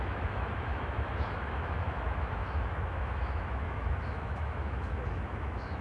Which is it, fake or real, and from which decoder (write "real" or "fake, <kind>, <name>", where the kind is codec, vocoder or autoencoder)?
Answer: fake, autoencoder, DAC-VAE